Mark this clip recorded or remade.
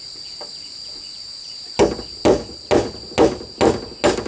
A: recorded